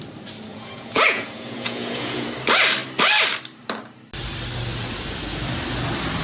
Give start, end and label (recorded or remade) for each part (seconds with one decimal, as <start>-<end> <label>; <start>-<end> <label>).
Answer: 0.0-0.5 recorded; 0.5-2.3 remade; 2.3-6.2 recorded